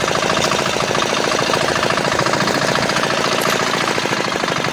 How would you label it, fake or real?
real